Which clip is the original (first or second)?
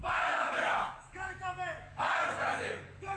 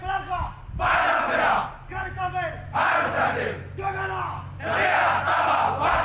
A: second